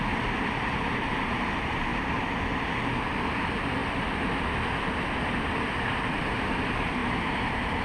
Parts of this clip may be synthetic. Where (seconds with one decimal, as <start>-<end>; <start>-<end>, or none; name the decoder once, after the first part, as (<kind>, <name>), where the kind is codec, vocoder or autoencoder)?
none